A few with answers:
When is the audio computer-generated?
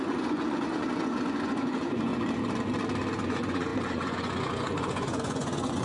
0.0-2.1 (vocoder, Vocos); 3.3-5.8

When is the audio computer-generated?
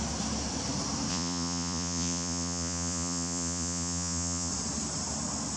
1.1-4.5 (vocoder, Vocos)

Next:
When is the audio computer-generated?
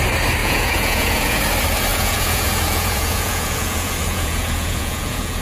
0.4-1.4 (vocoder, Vocos); 1.9-5.4